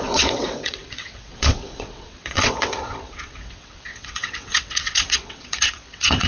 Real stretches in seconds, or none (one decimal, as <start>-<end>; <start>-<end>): none